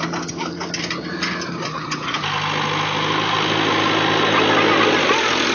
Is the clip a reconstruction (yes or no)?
no